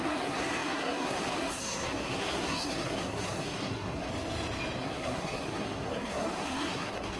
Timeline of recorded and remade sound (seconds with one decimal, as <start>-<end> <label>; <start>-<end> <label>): 0.0-4.1 remade; 4.1-4.8 recorded; 4.8-7.2 remade